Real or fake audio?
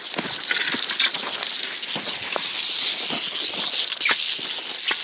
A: real